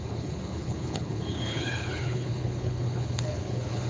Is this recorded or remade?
remade